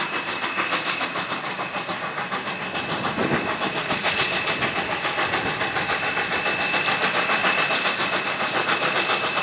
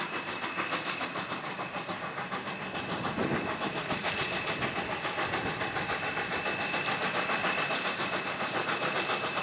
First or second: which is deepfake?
second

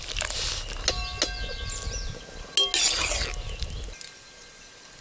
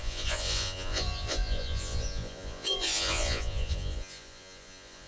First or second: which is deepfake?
second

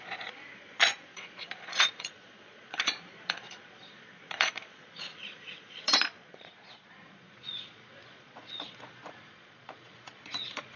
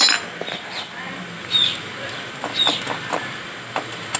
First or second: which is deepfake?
first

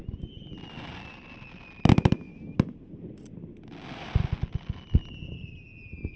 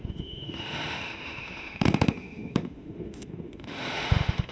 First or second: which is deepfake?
second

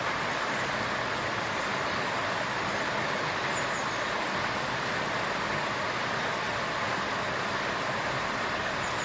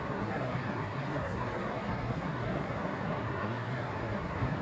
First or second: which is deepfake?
second